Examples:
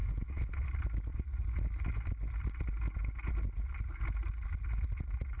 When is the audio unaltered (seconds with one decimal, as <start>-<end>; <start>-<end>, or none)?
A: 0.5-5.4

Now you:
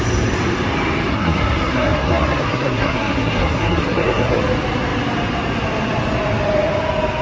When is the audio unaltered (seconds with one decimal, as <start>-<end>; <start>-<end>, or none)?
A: 0.0-1.1; 4.4-7.2

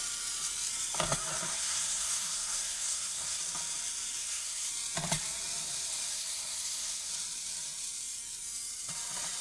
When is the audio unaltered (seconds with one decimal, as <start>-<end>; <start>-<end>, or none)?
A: 0.0-1.5; 3.4-4.2; 4.7-6.1; 7.1-9.4